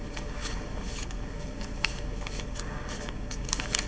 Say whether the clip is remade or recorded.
remade